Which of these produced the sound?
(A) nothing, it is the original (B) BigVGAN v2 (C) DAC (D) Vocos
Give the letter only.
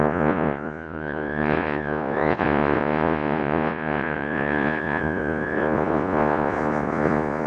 D